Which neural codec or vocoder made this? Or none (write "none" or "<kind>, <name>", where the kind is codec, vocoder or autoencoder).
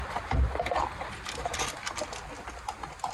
none